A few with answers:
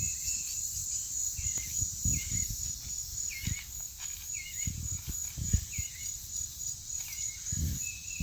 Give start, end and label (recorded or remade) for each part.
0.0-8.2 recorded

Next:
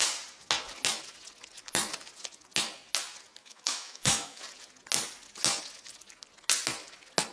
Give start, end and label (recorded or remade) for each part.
0.0-3.4 recorded; 3.4-4.4 remade; 4.4-7.3 recorded

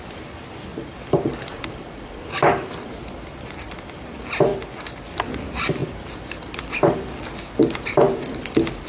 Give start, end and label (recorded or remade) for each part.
0.0-4.5 remade; 4.5-5.1 recorded; 5.1-5.8 remade; 5.8-6.4 recorded; 6.4-7.6 remade; 7.6-8.9 recorded

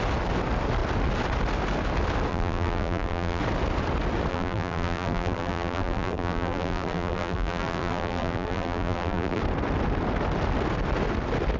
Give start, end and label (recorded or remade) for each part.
0.0-2.3 recorded; 2.3-3.4 remade; 3.4-4.3 recorded; 4.3-9.4 remade; 9.4-11.6 recorded